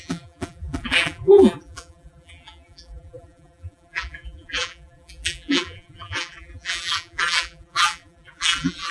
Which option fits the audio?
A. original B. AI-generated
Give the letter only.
B